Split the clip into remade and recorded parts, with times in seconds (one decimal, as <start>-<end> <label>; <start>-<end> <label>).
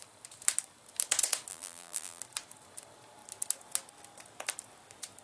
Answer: 0.0-1.5 recorded; 1.5-2.2 remade; 2.2-5.2 recorded